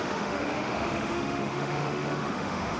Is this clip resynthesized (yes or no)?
yes